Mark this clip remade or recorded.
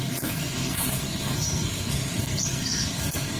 remade